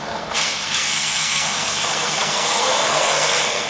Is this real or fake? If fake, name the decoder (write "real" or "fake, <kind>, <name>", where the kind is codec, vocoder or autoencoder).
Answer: fake, codec, SNAC